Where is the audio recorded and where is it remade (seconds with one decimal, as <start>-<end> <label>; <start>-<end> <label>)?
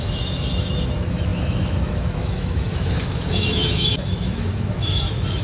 0.0-5.4 remade